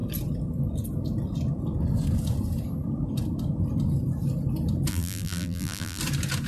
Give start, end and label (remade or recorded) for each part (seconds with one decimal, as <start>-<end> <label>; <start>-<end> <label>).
0.0-4.9 recorded; 4.9-6.0 remade; 6.0-6.5 recorded